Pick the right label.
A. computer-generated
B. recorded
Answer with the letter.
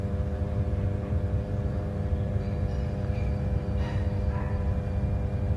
A